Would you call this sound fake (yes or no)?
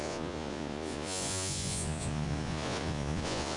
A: yes